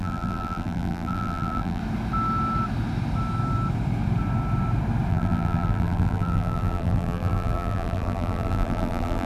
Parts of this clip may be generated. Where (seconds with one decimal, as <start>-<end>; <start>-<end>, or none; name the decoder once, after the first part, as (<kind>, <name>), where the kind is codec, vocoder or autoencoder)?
0.0-1.8 (vocoder, BigVGAN v2); 5.1-9.3